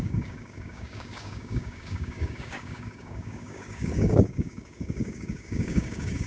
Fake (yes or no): yes